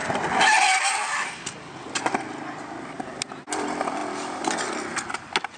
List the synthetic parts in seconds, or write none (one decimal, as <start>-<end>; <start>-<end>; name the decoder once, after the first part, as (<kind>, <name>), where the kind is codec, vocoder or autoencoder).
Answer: none